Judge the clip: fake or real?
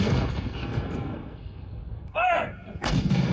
fake